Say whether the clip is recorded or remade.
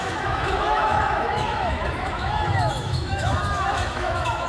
remade